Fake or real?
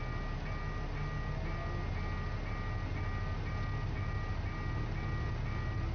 real